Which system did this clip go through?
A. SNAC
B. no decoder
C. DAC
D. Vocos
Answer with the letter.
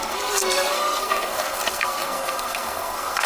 A